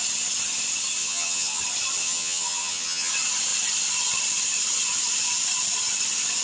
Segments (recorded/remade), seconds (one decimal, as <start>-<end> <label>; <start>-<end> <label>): 0.0-1.0 recorded; 1.0-1.6 remade; 1.6-2.0 recorded; 2.0-3.1 remade; 3.1-6.4 recorded